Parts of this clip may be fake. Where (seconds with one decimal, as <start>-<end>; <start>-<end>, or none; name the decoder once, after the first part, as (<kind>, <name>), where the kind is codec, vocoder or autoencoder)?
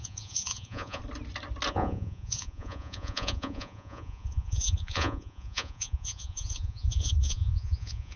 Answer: 0.0-1.0 (vocoder, Vocos); 1.7-8.2